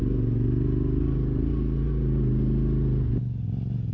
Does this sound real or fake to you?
real